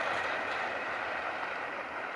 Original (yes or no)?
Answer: no